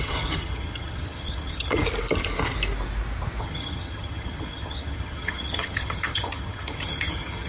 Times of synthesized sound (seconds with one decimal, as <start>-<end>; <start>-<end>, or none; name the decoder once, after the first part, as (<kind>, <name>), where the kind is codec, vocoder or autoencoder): 0.0-1.8 (vocoder, HiFi-GAN); 3.4-7.5